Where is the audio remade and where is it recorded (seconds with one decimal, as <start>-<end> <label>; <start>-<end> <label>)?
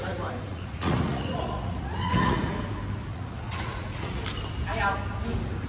0.0-0.5 recorded; 0.5-2.4 remade; 2.4-3.1 recorded; 3.1-4.2 remade; 4.2-5.7 recorded